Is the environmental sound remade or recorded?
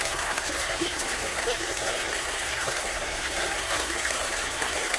remade